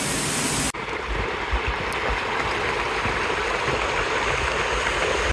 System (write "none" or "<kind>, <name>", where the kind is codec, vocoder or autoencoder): none